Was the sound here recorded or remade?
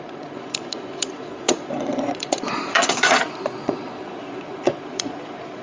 remade